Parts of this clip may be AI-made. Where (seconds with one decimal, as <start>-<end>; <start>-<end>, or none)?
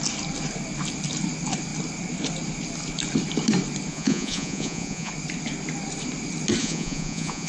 3.9-5.1; 6.6-7.5